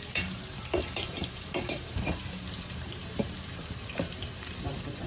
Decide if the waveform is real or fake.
fake